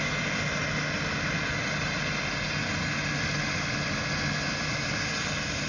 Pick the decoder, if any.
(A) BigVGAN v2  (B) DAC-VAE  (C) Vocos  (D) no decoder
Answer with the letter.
D